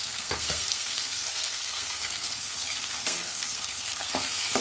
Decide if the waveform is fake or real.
fake